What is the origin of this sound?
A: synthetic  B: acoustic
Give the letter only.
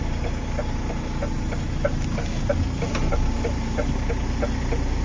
B